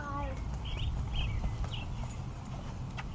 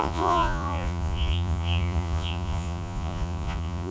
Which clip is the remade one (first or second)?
second